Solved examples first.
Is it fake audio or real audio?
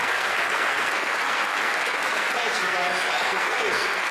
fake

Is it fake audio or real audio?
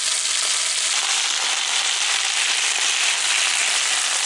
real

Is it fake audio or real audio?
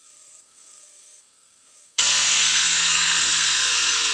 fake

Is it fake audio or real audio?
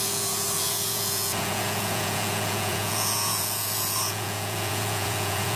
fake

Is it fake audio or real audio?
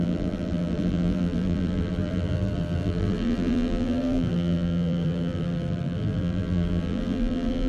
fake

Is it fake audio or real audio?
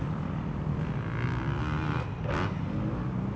real